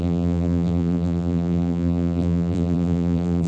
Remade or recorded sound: remade